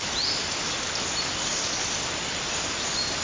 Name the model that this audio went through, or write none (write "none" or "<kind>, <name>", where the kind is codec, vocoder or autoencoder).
none